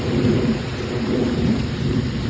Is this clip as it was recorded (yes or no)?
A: no